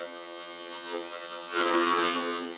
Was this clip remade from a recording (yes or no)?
yes